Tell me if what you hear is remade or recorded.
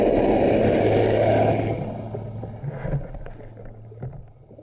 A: recorded